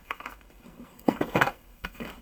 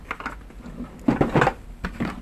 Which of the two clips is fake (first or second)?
first